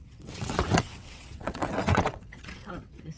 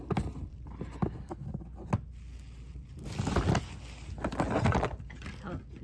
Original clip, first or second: second